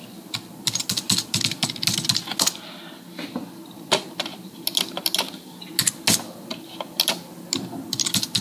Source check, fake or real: real